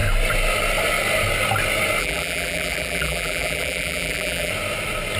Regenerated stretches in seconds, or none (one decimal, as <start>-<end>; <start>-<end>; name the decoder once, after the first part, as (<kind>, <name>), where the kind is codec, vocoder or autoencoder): 2.0-4.5 (vocoder, BigVGAN v2)